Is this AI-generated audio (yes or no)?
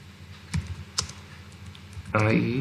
no